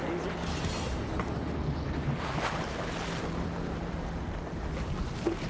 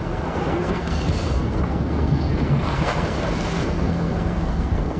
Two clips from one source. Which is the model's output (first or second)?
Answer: second